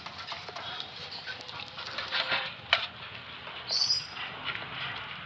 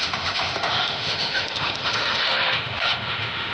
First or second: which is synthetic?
second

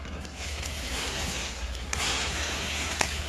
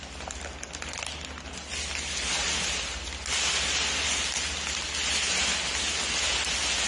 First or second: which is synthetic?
first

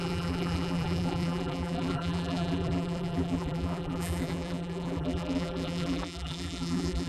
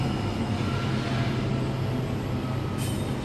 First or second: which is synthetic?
first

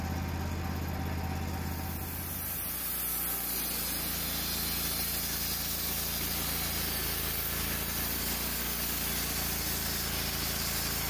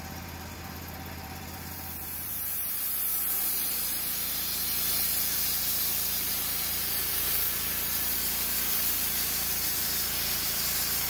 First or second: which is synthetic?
second